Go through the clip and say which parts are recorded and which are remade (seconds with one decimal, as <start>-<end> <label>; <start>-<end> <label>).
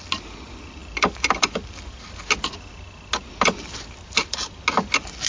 0.0-5.3 recorded